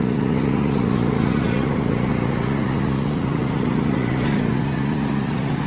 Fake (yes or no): yes